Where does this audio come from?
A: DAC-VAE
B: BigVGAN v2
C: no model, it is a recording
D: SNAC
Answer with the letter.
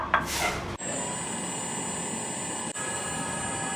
C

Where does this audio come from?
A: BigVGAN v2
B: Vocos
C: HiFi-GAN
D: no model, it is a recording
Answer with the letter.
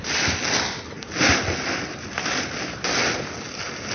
D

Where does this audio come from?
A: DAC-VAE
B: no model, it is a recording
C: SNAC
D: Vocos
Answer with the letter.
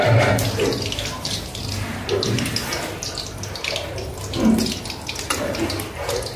B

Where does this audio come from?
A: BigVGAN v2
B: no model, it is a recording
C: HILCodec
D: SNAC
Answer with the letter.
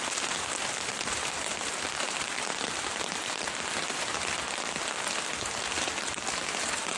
B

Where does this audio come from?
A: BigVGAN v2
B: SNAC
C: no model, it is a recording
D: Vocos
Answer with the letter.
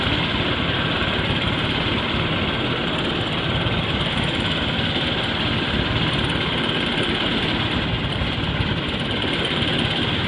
A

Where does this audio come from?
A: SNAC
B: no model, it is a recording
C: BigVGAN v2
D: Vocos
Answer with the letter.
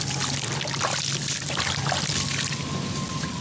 B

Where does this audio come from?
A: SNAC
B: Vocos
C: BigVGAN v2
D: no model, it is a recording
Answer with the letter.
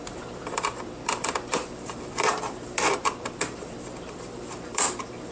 C